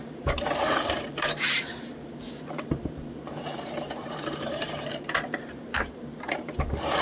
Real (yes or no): no